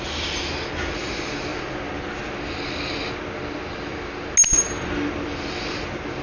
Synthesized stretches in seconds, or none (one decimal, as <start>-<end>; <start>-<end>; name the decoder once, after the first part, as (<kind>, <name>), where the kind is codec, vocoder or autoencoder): none